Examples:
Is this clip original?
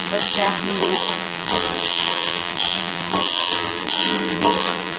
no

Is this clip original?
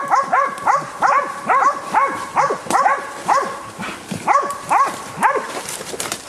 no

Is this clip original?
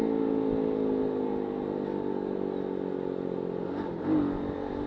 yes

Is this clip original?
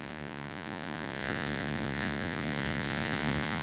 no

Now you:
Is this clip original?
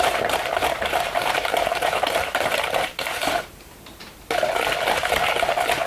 no